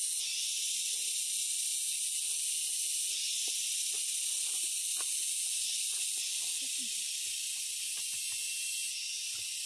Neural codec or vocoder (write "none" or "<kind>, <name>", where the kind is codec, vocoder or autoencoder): none